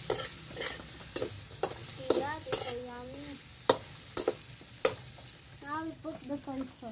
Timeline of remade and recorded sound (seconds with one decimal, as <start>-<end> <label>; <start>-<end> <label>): 0.0-6.9 recorded